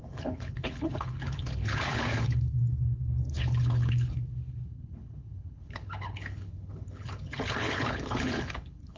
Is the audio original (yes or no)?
no